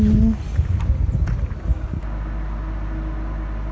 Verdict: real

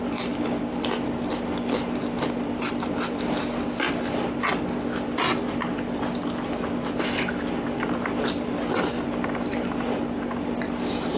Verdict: real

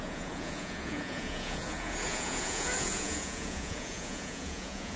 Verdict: fake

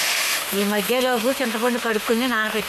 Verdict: fake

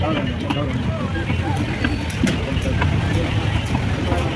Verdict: real